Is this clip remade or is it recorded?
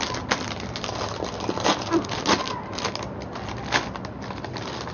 recorded